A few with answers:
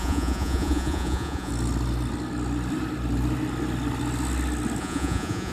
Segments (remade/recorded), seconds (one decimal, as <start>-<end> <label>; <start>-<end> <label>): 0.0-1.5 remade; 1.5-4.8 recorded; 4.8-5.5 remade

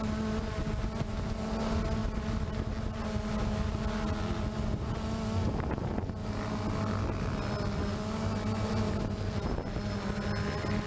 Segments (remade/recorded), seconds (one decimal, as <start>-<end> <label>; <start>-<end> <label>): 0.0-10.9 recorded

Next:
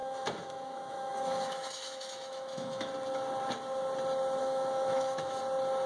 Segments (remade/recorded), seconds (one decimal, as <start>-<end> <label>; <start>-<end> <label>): 0.0-2.9 remade; 2.9-4.4 recorded; 4.4-5.4 remade; 5.4-5.9 recorded

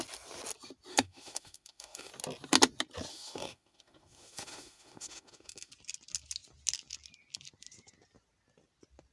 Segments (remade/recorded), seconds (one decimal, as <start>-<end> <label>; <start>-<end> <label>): 0.0-0.9 recorded; 0.9-2.1 remade; 2.1-3.1 recorded; 3.1-5.7 remade; 5.7-9.1 recorded